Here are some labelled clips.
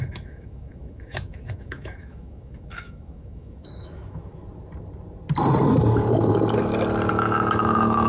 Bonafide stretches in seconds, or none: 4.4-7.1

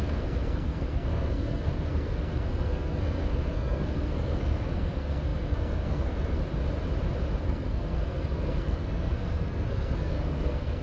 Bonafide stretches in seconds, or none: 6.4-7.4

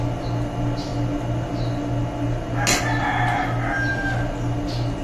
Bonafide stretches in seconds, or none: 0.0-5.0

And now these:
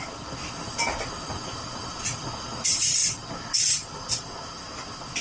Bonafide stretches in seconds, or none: 0.0-5.2